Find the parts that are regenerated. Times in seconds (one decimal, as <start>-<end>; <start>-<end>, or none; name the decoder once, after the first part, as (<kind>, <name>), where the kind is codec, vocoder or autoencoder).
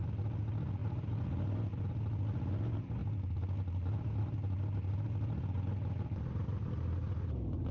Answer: none